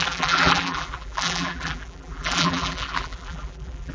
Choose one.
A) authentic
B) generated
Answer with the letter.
B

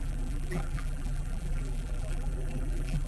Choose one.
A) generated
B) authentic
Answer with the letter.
A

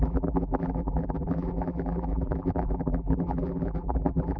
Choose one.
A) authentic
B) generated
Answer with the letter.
B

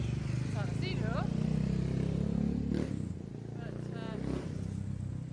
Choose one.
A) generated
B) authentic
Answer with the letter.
B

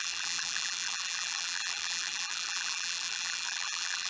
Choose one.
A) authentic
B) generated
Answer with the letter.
B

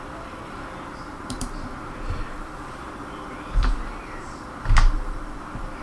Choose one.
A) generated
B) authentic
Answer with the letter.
A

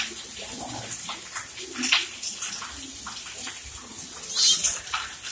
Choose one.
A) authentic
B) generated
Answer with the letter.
A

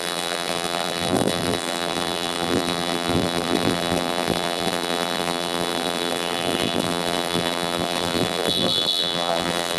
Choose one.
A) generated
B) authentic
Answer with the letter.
A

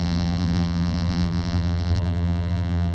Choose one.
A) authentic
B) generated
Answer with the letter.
B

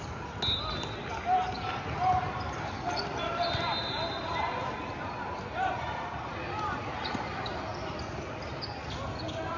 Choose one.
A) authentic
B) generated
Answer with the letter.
A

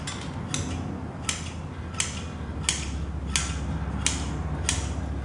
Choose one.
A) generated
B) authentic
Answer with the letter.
B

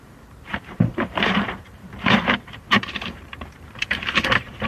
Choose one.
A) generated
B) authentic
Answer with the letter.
A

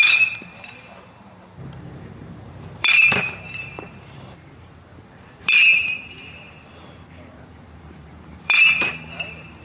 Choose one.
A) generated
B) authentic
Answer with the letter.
A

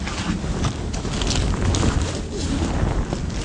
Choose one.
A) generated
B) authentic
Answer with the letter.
B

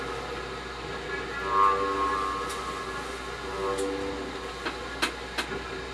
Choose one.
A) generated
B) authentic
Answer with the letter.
B